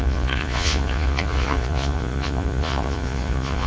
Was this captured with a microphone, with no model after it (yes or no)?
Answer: no